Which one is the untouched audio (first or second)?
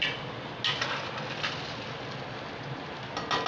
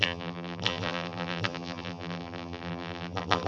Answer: first